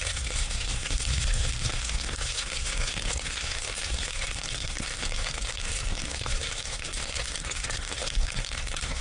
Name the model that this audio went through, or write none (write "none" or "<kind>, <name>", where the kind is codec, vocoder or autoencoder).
codec, SNAC